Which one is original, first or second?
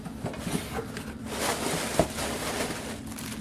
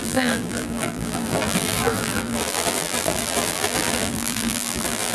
first